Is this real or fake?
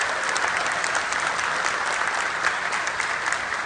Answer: real